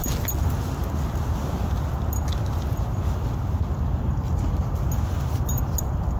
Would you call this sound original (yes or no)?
yes